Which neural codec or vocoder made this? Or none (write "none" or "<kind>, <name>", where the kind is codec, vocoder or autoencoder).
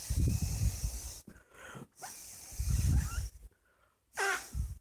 vocoder, BigVGAN v2